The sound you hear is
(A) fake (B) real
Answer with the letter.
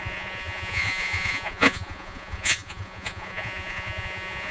A